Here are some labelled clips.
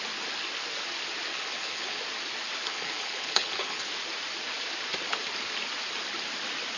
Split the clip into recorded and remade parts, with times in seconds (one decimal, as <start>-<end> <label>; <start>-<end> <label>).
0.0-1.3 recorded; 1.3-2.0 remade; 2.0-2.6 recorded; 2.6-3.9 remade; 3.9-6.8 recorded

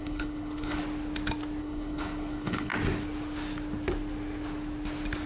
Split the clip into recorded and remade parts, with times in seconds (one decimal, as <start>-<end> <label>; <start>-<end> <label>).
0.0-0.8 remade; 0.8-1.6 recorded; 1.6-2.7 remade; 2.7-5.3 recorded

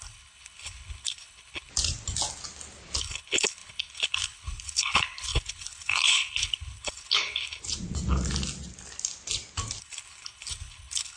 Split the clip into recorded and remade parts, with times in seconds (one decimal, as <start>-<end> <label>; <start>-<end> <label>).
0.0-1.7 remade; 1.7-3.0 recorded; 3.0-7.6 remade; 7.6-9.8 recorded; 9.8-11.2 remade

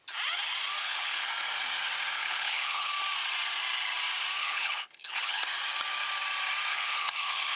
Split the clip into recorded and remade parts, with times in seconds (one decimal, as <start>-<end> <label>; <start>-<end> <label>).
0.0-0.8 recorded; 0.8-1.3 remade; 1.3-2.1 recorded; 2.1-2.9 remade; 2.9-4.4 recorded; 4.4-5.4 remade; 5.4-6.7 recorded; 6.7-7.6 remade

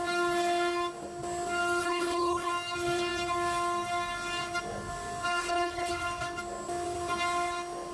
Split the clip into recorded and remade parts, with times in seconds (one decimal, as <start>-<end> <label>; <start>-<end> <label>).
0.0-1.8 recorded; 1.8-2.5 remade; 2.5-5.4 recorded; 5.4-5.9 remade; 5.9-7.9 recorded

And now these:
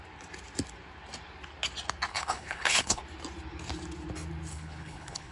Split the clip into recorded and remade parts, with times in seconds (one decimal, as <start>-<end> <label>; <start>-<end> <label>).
0.0-2.1 recorded; 2.1-3.0 remade; 3.0-4.5 recorded; 4.5-5.3 remade

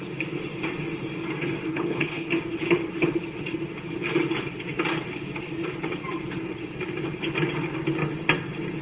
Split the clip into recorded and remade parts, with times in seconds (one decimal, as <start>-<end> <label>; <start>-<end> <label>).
0.0-1.7 recorded; 1.7-2.3 remade; 2.3-8.8 recorded

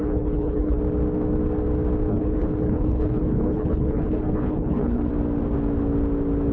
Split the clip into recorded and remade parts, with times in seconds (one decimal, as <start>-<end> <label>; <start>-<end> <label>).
0.0-0.8 remade; 0.8-2.1 recorded; 2.1-5.1 remade; 5.1-6.5 recorded